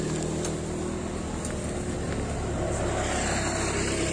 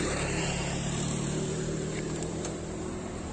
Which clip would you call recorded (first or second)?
first